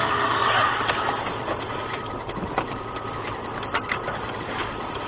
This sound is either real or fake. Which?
real